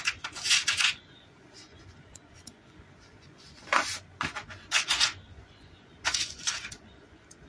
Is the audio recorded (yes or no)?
no